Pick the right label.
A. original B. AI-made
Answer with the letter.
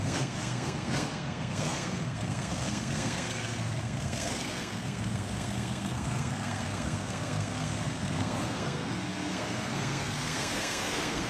B